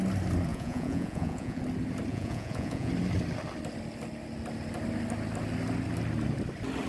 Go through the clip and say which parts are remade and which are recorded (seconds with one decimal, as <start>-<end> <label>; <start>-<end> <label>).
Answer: 0.0-0.5 recorded; 0.5-1.6 remade; 1.6-2.1 recorded; 2.1-2.9 remade; 2.9-6.9 recorded